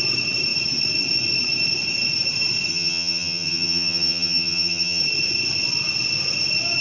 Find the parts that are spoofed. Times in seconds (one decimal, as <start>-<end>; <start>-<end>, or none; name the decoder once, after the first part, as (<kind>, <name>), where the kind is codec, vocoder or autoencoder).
2.7-5.0 (vocoder, HiFi-GAN)